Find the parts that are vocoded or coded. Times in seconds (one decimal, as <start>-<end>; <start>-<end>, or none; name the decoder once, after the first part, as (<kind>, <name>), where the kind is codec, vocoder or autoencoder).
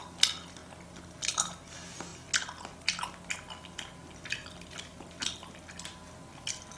none